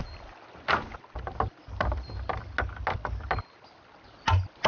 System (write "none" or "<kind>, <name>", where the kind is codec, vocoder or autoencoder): none